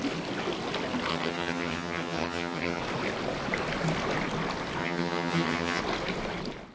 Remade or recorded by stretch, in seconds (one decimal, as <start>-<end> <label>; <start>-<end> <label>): 0.0-1.1 recorded; 1.1-2.8 remade; 2.8-4.8 recorded; 4.8-5.8 remade; 5.8-6.7 recorded